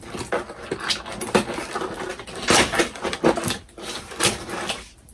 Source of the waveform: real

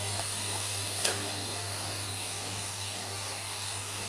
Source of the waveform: fake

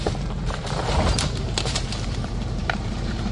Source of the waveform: fake